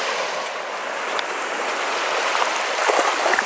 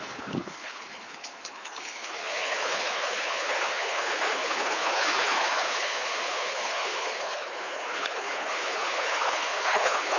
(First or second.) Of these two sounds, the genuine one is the first